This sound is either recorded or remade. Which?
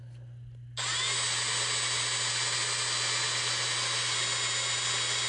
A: recorded